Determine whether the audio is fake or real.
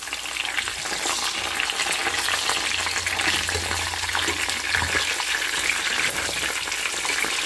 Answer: real